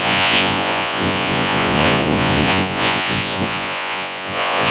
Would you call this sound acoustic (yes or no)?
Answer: no